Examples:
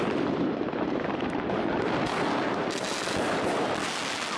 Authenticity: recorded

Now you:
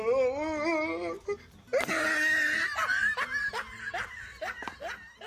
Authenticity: recorded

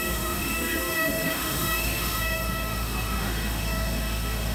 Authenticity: remade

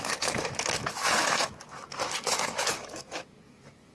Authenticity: remade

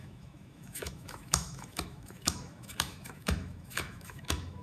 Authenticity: remade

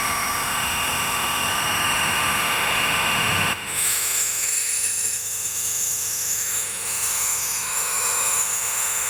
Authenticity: remade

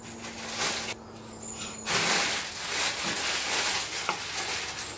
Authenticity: recorded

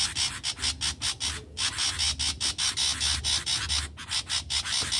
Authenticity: recorded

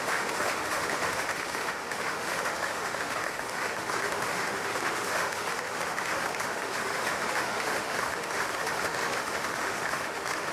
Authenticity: remade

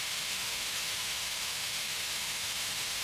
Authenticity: remade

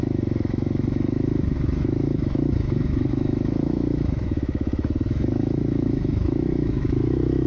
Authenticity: remade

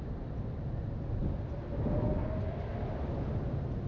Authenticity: recorded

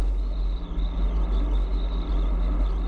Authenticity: recorded